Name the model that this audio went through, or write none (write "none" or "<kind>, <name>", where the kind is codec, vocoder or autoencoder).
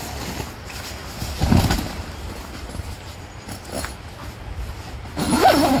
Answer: none